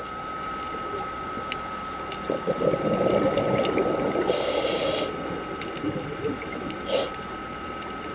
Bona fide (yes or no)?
yes